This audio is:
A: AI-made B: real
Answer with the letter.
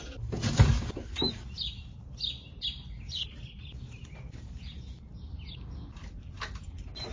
B